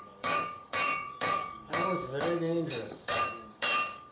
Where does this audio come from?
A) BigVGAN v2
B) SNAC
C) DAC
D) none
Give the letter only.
C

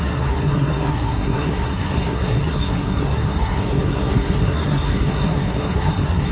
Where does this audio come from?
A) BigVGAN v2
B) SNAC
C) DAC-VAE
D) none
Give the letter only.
B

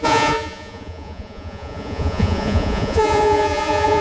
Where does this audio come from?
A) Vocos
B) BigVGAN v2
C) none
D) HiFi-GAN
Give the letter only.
A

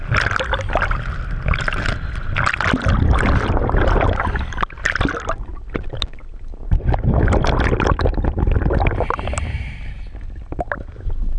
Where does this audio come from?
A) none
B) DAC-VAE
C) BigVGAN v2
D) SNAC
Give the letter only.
A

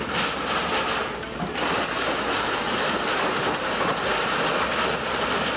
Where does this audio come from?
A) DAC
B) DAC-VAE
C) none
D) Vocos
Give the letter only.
C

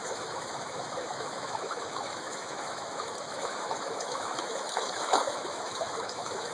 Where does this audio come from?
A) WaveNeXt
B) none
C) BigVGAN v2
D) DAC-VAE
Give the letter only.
D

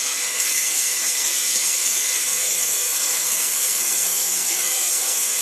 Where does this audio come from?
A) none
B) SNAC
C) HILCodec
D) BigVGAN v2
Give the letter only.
B